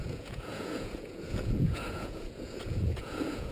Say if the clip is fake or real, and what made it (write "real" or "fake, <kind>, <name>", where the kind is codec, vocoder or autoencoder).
fake, vocoder, Vocos